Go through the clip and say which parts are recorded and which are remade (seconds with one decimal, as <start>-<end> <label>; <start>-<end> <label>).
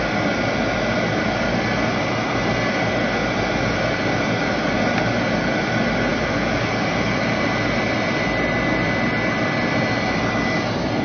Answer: 0.0-11.0 recorded